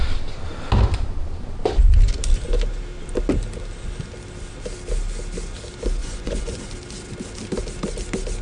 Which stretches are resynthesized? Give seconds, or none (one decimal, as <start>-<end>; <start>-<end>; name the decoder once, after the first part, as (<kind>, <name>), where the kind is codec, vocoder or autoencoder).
6.0-6.7 (vocoder, Vocos)